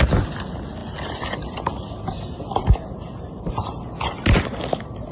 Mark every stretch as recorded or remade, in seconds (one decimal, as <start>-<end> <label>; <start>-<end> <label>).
0.0-5.1 recorded